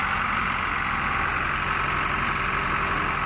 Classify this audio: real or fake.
real